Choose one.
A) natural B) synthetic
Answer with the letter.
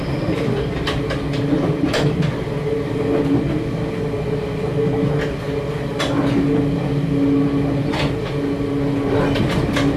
A